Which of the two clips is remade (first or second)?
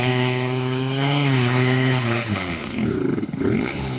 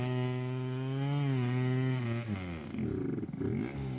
first